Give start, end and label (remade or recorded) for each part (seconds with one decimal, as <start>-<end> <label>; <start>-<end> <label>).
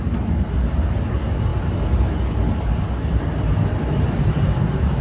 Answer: 0.0-5.0 recorded